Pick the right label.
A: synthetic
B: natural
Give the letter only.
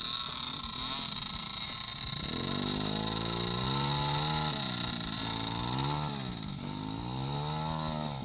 B